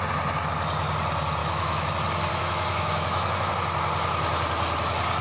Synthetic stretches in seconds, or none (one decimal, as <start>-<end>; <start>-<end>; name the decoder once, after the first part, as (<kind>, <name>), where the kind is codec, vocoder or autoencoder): 1.4-1.9 (autoencoder, DAC-VAE); 2.3-3.5

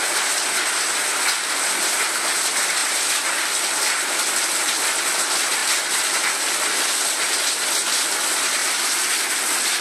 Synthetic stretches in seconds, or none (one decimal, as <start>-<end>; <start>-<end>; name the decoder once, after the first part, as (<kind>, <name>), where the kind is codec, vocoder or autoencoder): none

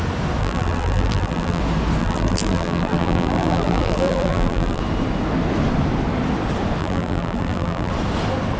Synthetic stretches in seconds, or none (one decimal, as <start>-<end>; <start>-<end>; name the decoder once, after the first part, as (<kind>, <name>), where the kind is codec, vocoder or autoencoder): 0.4-1.6 (vocoder, BigVGAN v2); 2.0-4.8; 6.8-7.9

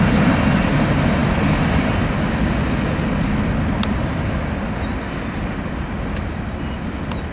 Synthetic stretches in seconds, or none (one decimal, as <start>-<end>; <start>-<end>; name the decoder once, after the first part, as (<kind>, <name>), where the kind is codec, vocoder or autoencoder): none